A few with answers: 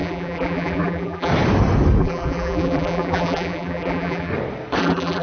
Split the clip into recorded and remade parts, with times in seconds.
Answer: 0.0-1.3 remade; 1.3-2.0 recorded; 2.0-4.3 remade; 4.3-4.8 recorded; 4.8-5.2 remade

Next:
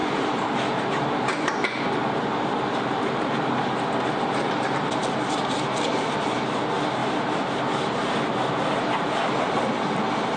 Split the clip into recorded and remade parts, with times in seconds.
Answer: 0.0-3.5 remade; 3.5-7.0 recorded; 7.0-7.6 remade; 7.6-10.4 recorded

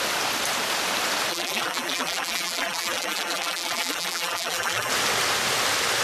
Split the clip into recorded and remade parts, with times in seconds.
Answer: 0.0-1.3 recorded; 1.3-4.9 remade; 4.9-6.0 recorded

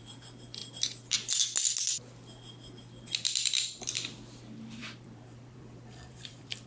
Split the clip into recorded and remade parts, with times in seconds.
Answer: 0.0-0.6 remade; 0.6-4.6 recorded; 4.6-6.7 remade